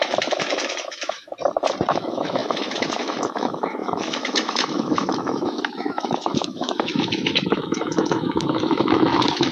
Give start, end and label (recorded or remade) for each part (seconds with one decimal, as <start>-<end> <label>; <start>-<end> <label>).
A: 0.0-1.3 remade; 1.3-1.9 recorded; 1.9-9.5 remade